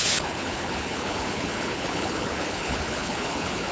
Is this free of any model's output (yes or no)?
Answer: no